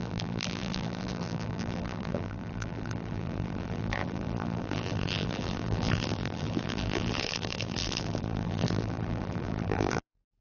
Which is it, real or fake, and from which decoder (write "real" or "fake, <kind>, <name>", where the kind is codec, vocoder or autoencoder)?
fake, vocoder, BigVGAN v2